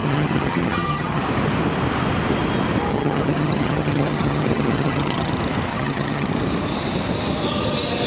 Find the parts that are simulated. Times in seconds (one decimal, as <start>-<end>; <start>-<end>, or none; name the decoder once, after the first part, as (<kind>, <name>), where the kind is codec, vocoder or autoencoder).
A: 0.0-1.2 (vocoder, HiFi-GAN); 2.9-5.3; 5.7-6.3

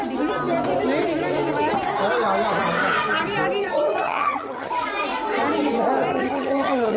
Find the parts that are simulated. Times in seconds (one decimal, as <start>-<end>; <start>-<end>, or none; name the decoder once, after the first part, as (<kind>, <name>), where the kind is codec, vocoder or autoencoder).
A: 3.6-4.7 (vocoder, HiFi-GAN); 6.1-7.0

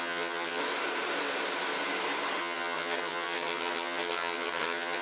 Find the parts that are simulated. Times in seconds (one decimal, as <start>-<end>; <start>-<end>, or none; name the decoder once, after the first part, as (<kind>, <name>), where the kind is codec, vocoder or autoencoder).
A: 0.0-0.6 (vocoder, HiFi-GAN); 2.4-5.0

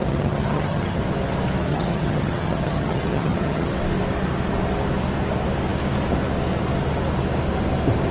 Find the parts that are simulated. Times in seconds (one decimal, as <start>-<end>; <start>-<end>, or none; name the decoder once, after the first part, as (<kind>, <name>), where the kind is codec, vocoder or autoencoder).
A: 0.0-1.0 (vocoder, HiFi-GAN); 1.7-3.7